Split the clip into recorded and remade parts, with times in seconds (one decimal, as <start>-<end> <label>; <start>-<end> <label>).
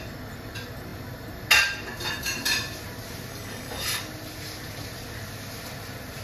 0.0-3.3 recorded; 3.3-4.0 remade; 4.0-6.2 recorded